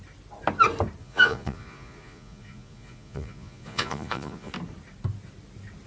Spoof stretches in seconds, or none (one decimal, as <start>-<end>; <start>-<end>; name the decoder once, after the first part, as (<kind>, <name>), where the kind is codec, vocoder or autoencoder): 1.0-4.5 (vocoder, Vocos)